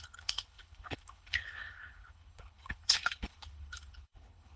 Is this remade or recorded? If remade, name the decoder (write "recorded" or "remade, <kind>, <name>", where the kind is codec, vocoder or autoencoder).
remade, codec, HILCodec